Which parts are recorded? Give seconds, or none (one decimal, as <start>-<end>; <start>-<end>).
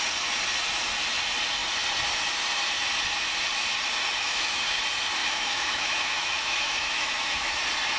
0.0-4.2; 4.8-5.2; 7.6-8.0